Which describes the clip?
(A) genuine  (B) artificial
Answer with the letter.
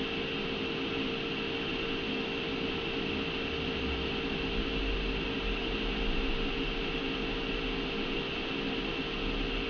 A